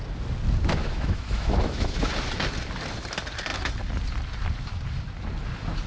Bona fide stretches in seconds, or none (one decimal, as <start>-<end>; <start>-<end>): 0.0-0.8; 2.1-5.9